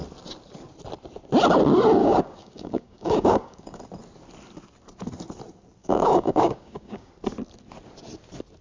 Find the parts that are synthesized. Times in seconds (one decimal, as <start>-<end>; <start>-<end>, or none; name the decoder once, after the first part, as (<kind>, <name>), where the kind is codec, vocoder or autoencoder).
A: 2.0-3.8 (codec, DAC); 5.8-7.1